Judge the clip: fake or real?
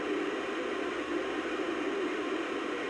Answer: real